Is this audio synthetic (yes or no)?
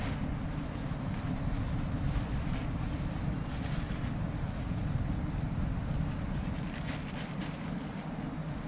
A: no